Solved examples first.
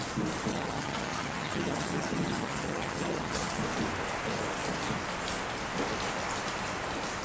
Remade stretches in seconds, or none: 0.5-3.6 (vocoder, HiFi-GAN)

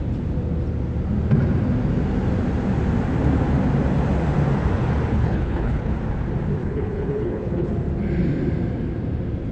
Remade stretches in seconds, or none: 5.1-6.0 (codec, HILCodec); 6.6-7.7

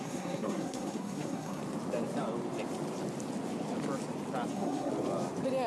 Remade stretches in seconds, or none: 0.0-1.6 (codec, SNAC); 4.5-4.9

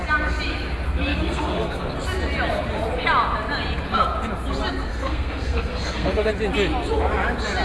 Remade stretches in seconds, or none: 1.1-2.0 (codec, SNAC); 4.9-6.3